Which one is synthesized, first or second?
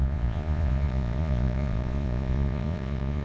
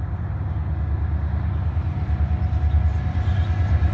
first